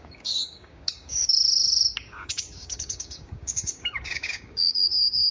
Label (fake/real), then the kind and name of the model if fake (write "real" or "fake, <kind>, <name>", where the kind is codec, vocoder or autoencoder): fake, codec, DAC